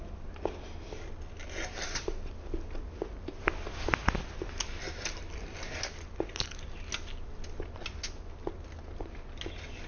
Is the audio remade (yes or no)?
no